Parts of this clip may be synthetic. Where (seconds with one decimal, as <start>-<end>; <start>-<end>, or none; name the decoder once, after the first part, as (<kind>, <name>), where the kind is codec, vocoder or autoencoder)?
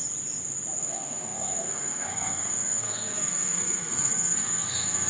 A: 0.8-5.1 (codec, SNAC)